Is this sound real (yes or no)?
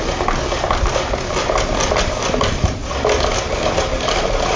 yes